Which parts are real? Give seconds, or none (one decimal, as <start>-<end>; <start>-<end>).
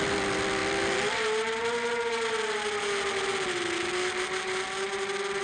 0.0-5.4